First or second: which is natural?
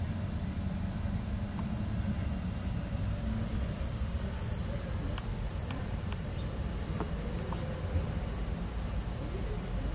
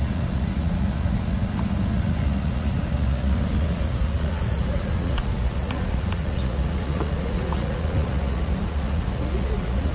first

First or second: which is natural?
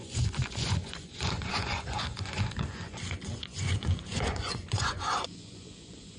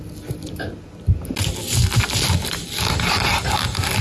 second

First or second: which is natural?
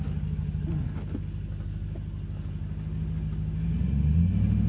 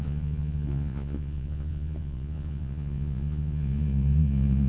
first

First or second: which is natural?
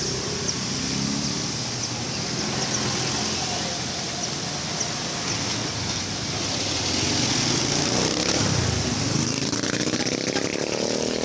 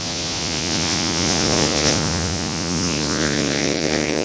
first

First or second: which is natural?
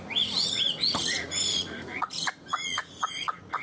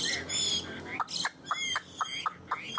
second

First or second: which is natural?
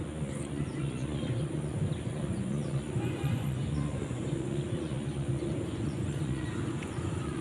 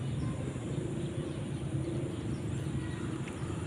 second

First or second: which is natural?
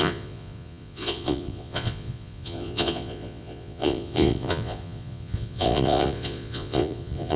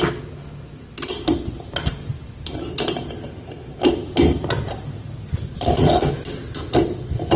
second